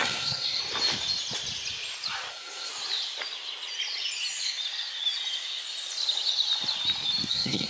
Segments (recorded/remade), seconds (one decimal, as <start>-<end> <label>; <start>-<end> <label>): 0.0-0.6 remade; 0.6-2.3 recorded; 2.3-2.7 remade; 2.7-7.3 recorded; 7.3-7.7 remade